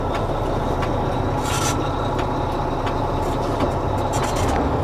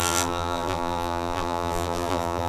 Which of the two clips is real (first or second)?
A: first